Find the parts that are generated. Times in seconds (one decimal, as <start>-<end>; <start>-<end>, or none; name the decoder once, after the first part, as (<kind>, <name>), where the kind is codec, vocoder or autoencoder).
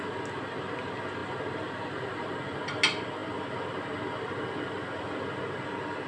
none